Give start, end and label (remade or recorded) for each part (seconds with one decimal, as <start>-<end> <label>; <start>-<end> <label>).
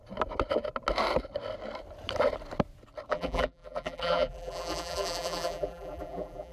0.0-3.1 recorded; 3.1-6.5 remade